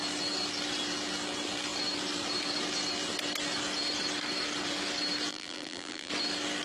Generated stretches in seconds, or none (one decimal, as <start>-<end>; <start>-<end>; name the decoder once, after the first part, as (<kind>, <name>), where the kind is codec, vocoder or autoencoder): 5.3-6.1 (vocoder, BigVGAN v2)